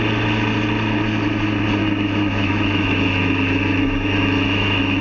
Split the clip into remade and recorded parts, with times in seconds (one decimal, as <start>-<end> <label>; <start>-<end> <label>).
0.0-1.8 recorded; 1.8-5.0 remade